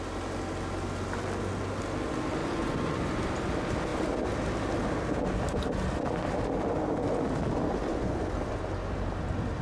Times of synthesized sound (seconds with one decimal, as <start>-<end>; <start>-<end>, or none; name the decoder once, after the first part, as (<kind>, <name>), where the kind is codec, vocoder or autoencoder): 2.4-3.2 (vocoder, Vocos); 7.9-8.6